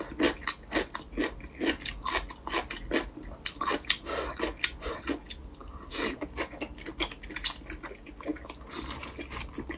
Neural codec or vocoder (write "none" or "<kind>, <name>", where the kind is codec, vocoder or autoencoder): none